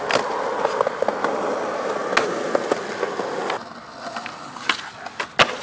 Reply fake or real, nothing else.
real